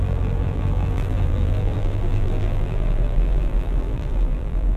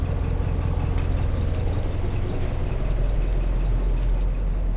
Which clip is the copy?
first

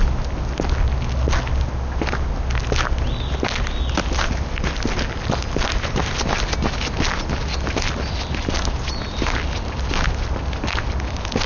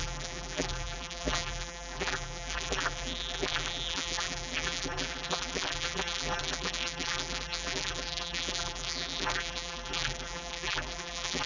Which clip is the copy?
second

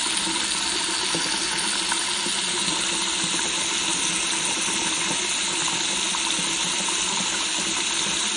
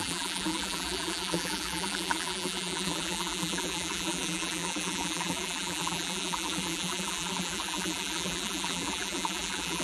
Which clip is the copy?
second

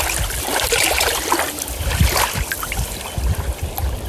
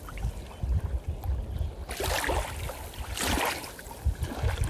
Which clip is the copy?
first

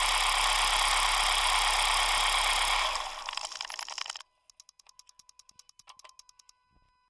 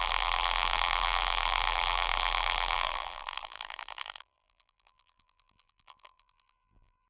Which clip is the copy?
second